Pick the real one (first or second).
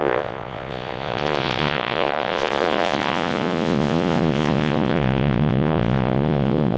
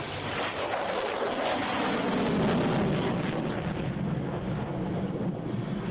second